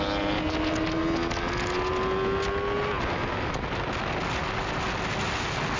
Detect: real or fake real